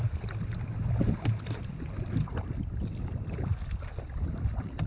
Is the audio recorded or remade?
recorded